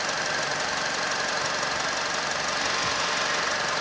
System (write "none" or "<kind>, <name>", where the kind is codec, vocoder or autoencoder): none